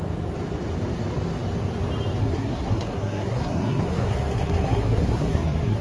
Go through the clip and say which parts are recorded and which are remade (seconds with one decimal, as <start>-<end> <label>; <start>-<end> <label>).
0.0-2.2 recorded; 2.2-5.8 remade